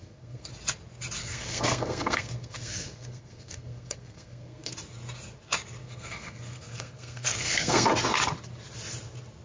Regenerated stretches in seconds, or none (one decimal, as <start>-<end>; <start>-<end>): 0.0-0.5; 1.2-4.7; 5.8-7.9